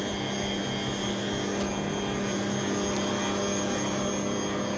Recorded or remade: recorded